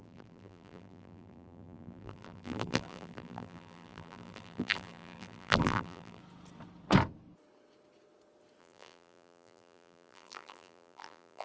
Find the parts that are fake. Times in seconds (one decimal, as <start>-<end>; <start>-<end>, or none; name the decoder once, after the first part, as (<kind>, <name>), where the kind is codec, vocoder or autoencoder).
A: 0.0-6.2 (vocoder, BigVGAN v2); 8.6-11.4